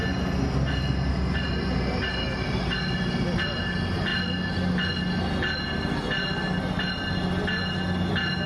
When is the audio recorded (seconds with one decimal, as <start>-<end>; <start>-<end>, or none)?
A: 0.0-8.5